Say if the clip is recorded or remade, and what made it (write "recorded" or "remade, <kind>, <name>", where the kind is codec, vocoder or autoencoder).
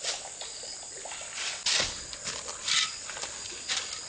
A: recorded